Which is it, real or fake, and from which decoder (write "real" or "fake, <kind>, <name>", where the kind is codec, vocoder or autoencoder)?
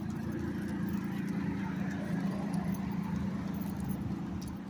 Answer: real